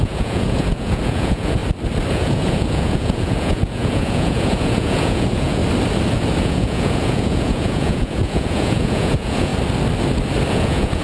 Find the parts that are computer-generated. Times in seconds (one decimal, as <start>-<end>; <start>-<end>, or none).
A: 0.0-1.6; 2.1-5.6; 6.4-9.5; 10.5-11.0